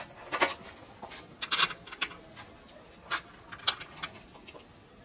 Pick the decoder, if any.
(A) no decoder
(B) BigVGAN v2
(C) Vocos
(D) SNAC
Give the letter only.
A